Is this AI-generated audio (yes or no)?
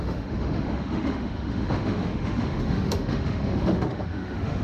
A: yes